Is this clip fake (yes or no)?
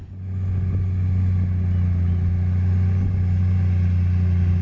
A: no